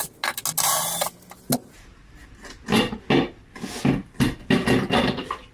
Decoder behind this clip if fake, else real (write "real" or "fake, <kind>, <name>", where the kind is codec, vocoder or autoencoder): real